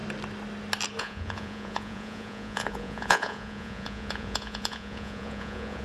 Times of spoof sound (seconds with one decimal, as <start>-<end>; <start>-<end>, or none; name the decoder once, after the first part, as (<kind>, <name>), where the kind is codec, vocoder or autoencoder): 1.0-5.8 (vocoder, Vocos)